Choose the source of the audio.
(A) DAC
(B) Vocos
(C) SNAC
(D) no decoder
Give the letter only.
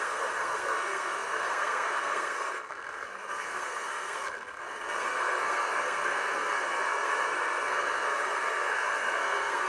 C